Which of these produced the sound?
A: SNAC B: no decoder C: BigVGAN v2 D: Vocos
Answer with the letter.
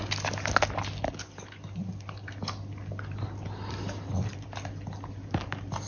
B